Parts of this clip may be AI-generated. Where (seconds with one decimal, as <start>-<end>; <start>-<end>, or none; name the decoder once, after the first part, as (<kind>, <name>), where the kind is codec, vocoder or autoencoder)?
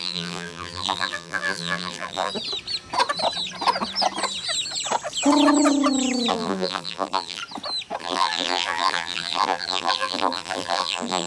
0.0-2.3 (vocoder, BigVGAN v2); 6.3-7.4; 8.0-11.3